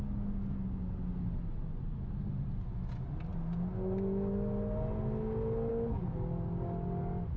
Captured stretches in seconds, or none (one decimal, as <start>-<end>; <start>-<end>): 0.0-7.4